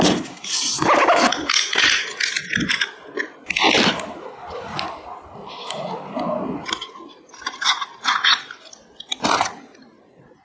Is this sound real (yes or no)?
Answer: yes